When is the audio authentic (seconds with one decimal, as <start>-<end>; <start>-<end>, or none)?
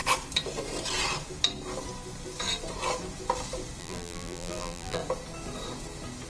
0.0-3.8; 5.0-6.3